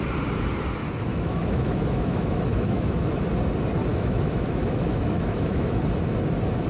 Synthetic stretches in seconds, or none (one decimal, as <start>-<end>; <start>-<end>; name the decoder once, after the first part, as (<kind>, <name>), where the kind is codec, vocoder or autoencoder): 1.1-3.1 (autoencoder, DAC-VAE); 3.9-5.8